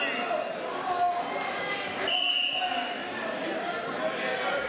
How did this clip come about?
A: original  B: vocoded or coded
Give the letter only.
A